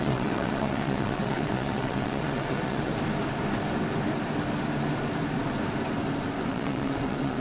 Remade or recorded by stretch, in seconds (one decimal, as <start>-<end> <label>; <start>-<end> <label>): 0.0-2.9 remade; 2.9-6.5 recorded; 6.5-7.4 remade